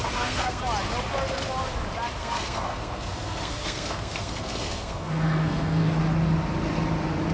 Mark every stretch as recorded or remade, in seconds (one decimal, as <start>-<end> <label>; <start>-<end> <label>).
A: 0.0-0.6 remade; 0.6-2.2 recorded; 2.2-6.0 remade; 6.0-7.3 recorded